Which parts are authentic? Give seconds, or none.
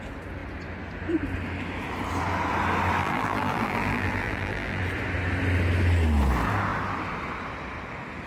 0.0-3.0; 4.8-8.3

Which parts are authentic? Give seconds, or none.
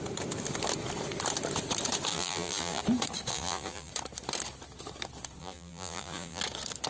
0.0-2.1; 2.8-3.3; 3.9-5.4; 6.4-6.9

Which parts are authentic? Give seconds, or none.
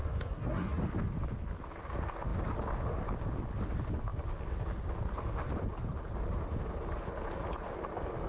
0.8-8.3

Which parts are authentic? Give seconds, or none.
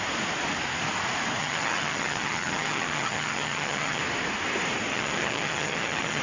0.0-1.4; 4.0-4.9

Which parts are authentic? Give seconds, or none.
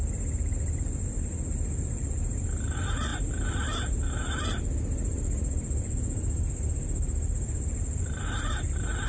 0.0-9.1